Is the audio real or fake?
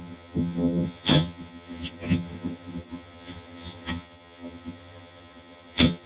fake